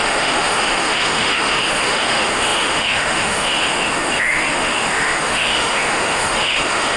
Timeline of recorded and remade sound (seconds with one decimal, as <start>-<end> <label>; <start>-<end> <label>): 0.0-7.0 remade